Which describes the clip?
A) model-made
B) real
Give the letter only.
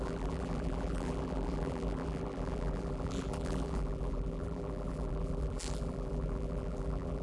A